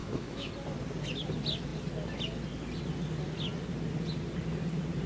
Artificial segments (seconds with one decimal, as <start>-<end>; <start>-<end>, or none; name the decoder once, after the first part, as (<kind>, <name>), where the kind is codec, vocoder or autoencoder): 0.0-0.5 (autoencoder, DAC-VAE)